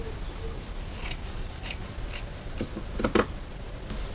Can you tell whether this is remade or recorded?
recorded